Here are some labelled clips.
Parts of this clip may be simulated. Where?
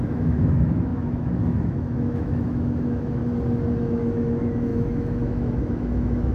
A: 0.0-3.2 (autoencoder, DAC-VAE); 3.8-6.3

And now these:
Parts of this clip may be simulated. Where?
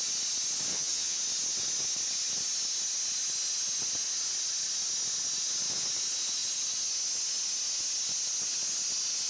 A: 0.7-1.2 (vocoder, HiFi-GAN)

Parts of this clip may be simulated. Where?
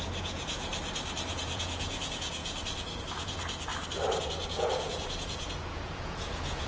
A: 0.0-0.7 (vocoder, Vocos); 1.3-3.7; 4.2-6.7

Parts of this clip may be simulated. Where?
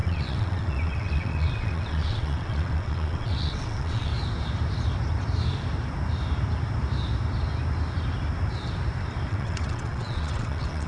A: 0.0-4.1 (vocoder, WaveNeXt); 9.3-10.9